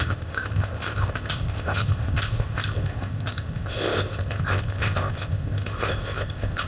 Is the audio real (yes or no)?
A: no